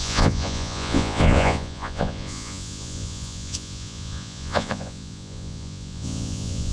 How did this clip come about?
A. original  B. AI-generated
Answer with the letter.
B